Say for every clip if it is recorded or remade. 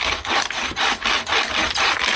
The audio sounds recorded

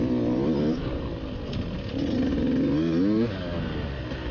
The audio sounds recorded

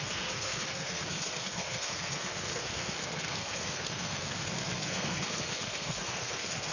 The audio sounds remade